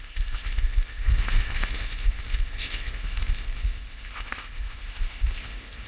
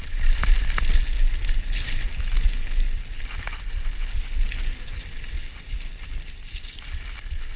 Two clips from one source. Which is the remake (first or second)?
first